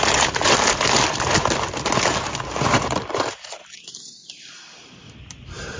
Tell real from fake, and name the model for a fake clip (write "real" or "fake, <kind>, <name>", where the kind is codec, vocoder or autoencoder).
real